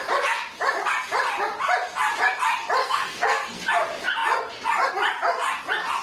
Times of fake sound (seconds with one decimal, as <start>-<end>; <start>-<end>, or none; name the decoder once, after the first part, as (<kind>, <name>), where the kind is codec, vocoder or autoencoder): 2.8-3.6 (codec, SNAC)